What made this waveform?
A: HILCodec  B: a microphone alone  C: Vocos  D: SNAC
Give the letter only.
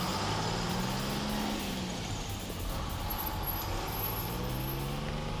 B